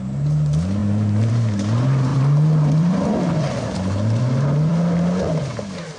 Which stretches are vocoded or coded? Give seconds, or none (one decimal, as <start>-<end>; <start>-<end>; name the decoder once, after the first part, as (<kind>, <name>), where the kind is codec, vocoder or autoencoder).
2.1-4.2 (vocoder, BigVGAN v2)

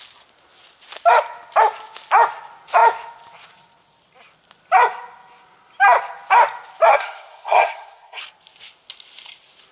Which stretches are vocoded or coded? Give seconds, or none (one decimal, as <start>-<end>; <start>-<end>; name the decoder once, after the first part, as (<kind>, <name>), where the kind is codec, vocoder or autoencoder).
6.9-8.2 (codec, SNAC)

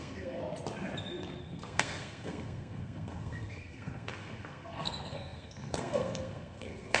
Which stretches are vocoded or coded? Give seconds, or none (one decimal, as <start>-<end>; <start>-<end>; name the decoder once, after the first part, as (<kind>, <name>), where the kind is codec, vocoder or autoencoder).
0.0-0.4 (codec, SNAC); 1.4-7.0

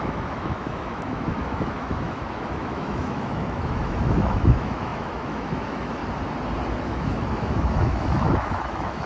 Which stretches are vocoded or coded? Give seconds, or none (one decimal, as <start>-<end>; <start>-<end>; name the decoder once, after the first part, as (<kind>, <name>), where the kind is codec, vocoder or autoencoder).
0.0-6.0 (autoencoder, DAC-VAE); 6.8-9.1

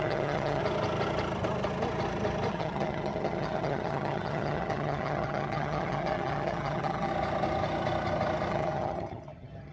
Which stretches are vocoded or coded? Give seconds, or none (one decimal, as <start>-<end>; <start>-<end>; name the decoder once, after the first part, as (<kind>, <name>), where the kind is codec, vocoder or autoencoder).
0.0-0.6 (vocoder, HiFi-GAN); 2.5-7.1; 8.5-9.7

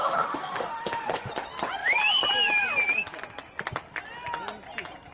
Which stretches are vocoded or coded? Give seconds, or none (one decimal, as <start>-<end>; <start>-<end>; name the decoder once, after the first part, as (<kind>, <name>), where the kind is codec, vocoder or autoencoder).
0.0-1.3 (autoencoder, DAC-VAE)

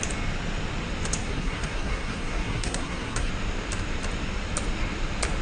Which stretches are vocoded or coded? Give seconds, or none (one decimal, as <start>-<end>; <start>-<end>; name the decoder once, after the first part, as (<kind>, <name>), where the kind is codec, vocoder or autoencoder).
1.2-3.3 (codec, SNAC)

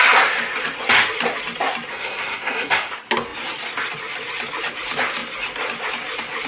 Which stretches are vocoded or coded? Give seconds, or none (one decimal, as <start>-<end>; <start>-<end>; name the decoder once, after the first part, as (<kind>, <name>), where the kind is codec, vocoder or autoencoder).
1.9-2.9 (codec, SNAC)